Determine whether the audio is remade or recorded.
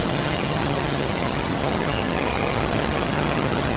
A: remade